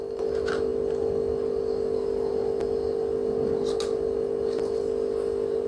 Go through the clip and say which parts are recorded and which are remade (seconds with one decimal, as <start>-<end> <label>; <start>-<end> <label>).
0.0-5.7 recorded